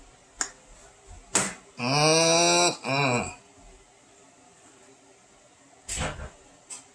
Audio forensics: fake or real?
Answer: real